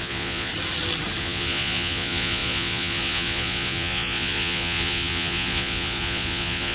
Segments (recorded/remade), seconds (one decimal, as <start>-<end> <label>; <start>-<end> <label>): 0.0-0.5 remade; 0.5-1.2 recorded; 1.2-6.7 remade